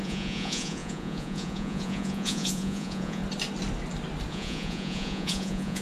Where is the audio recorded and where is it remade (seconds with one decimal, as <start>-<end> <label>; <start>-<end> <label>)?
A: 0.0-3.2 remade; 3.2-4.3 recorded; 4.3-5.8 remade